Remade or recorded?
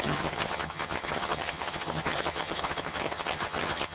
remade